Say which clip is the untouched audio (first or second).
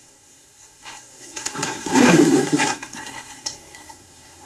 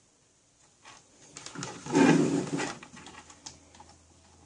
second